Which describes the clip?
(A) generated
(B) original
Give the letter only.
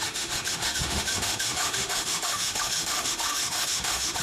A